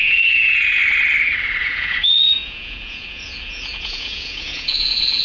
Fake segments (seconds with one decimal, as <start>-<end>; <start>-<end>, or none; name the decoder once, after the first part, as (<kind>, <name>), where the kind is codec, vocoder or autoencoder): 0.0-0.8 (vocoder, Vocos); 1.6-5.2